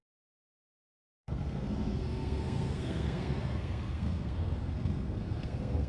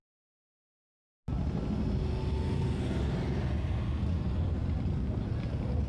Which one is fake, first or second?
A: first